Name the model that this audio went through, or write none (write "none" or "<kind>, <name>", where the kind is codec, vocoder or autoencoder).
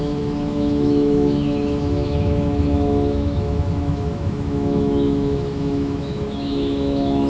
autoencoder, DAC-VAE